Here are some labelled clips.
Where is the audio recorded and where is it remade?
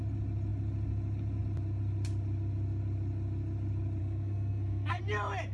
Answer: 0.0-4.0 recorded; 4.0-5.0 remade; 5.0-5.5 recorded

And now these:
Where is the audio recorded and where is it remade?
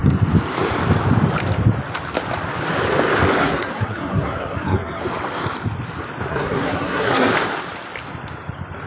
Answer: 0.0-3.4 recorded; 3.4-5.0 remade; 5.0-6.3 recorded; 6.3-7.3 remade; 7.3-8.9 recorded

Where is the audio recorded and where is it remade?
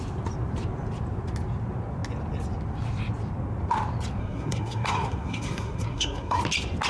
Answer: 0.0-4.2 recorded; 4.2-6.4 remade; 6.4-6.9 recorded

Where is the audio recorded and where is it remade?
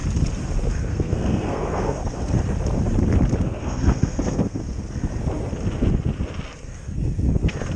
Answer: 0.0-0.9 recorded; 0.9-2.0 remade; 2.0-3.4 recorded; 3.4-4.6 remade; 4.6-7.8 recorded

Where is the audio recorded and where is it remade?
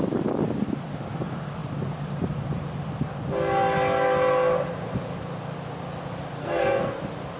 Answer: 0.0-6.4 recorded; 6.4-7.0 remade; 7.0-7.4 recorded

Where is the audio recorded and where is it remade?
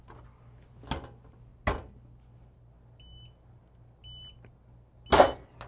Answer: 0.0-5.7 recorded